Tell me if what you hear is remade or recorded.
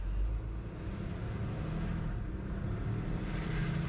recorded